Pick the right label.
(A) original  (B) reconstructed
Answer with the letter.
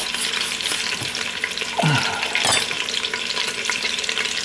A